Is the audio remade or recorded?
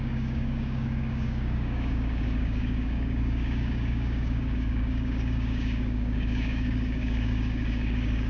remade